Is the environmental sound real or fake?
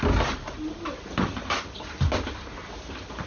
real